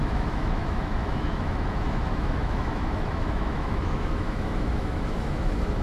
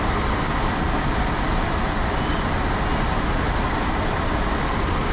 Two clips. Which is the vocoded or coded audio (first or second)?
first